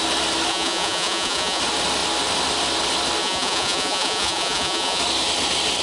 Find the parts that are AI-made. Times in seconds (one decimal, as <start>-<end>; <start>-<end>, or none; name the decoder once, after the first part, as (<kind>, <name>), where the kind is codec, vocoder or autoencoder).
0.5-1.6 (vocoder, Vocos); 3.2-5.0